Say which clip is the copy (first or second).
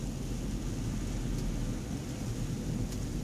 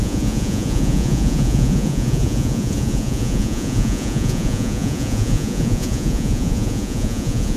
second